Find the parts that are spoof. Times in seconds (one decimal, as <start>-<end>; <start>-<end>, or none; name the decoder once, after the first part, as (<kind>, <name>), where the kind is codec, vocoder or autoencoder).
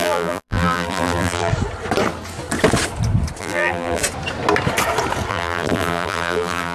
0.0-1.5 (vocoder, BigVGAN v2); 3.4-4.0; 5.3-6.7